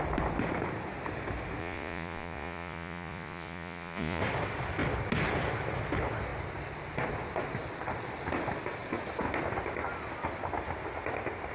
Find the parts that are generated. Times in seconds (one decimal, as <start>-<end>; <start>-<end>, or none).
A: 1.6-4.2